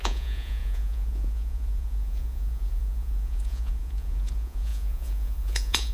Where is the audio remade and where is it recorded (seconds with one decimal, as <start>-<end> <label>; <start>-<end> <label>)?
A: 0.0-5.9 remade